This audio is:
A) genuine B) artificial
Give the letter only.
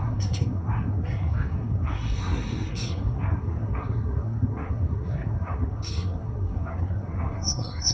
B